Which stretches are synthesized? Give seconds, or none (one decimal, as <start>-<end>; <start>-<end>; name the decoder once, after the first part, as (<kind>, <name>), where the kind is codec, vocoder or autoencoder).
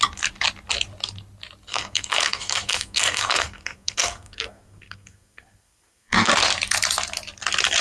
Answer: 1.7-6.3 (codec, SNAC)